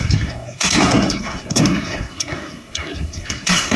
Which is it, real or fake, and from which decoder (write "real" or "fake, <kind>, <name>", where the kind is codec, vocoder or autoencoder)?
fake, codec, SNAC